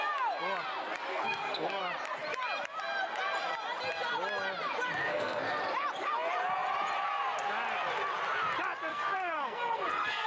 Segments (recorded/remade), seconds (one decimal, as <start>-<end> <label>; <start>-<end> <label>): 0.0-1.1 recorded; 1.1-1.8 remade; 1.8-5.0 recorded; 5.0-5.5 remade; 5.5-8.9 recorded; 8.9-10.3 remade